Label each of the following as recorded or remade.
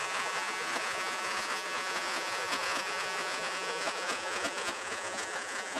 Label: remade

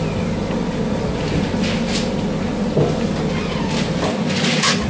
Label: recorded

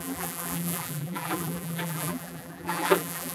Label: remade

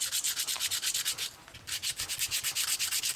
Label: recorded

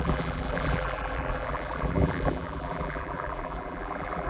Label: remade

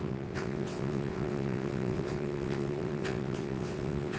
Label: remade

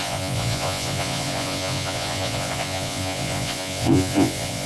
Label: remade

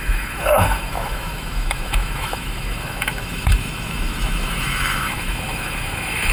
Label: remade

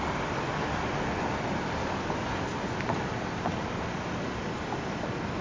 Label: recorded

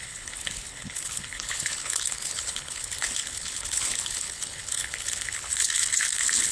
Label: remade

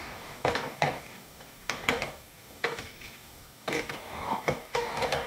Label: remade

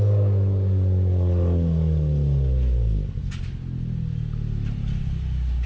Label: recorded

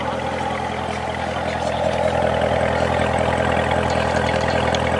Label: recorded